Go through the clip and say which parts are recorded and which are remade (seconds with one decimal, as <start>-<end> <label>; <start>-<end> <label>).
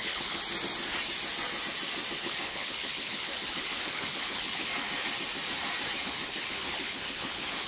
0.0-0.4 remade; 0.4-2.2 recorded; 2.2-4.7 remade; 4.7-6.0 recorded; 6.0-7.7 remade